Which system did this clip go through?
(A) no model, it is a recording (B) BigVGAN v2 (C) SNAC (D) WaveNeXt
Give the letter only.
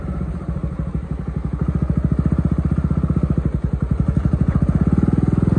A